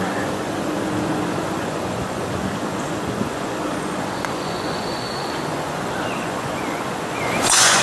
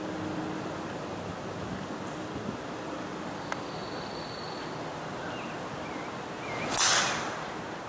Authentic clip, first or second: second